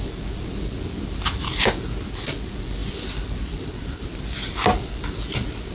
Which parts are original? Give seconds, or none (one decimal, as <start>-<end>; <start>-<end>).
0.0-5.7